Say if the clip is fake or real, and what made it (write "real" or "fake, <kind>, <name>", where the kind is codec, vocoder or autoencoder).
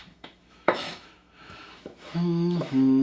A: fake, autoencoder, DAC-VAE